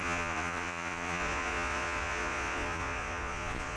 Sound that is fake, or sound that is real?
fake